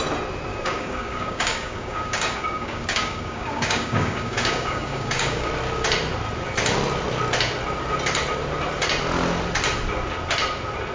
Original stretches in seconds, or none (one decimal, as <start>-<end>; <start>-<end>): 0.0-0.5; 5.5-10.9